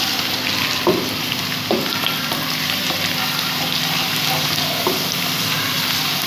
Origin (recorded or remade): recorded